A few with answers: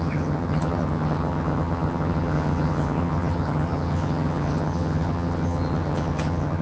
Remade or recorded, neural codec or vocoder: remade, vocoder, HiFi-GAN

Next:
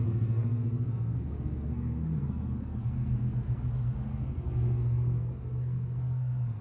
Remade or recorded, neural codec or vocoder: remade, codec, SNAC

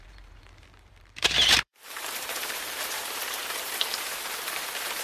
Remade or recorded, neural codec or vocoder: remade, vocoder, BigVGAN v2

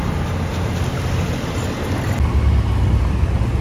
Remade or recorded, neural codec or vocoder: recorded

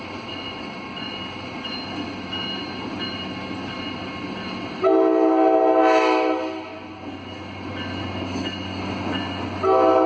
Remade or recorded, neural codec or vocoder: recorded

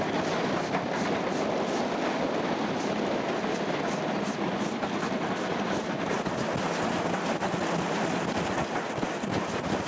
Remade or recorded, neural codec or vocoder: recorded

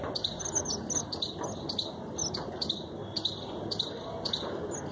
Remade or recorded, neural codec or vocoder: recorded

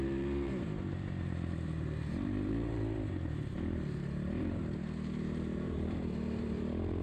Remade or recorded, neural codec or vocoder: remade, vocoder, BigVGAN v2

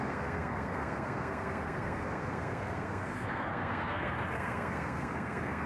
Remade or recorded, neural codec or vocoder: remade, codec, SNAC